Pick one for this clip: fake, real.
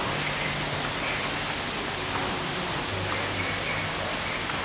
real